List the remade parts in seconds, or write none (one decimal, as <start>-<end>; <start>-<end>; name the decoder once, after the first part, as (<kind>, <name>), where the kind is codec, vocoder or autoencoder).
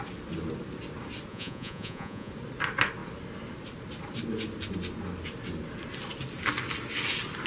1.3-2.3 (vocoder, Vocos)